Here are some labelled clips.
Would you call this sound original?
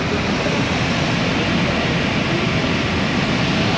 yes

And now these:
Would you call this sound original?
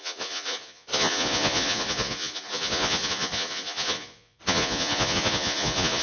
no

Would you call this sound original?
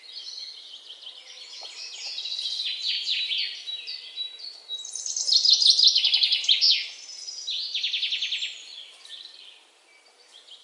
yes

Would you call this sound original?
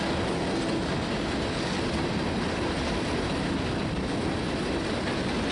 yes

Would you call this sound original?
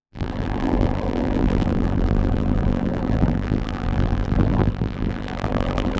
no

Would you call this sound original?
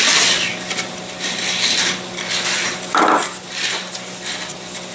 yes